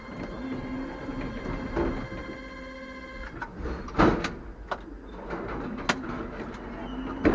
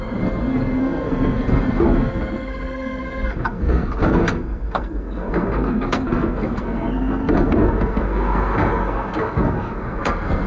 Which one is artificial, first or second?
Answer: second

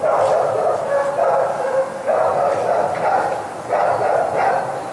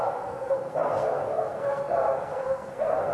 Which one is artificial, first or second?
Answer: second